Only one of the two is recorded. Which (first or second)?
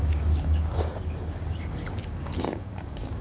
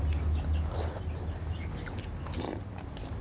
second